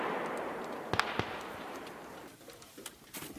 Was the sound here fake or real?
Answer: real